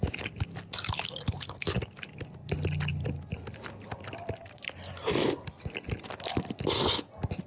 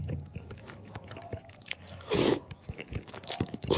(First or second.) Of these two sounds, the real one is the first